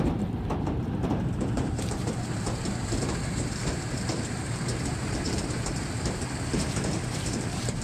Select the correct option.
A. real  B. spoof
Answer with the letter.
B